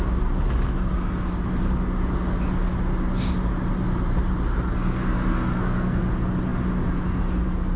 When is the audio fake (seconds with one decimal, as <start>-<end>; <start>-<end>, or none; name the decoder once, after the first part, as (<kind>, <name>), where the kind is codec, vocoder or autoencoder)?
4.7-6.0 (codec, SNAC)